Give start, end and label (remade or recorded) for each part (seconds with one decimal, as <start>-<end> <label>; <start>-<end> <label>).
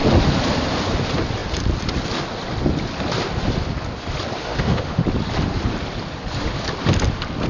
0.0-4.4 recorded; 4.4-5.0 remade; 5.0-7.5 recorded